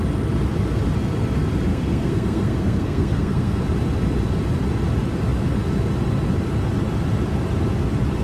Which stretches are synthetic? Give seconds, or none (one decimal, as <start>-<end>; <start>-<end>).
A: 1.7-3.6